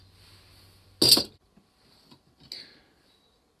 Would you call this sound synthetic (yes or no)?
no